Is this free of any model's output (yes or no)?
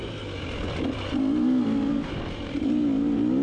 yes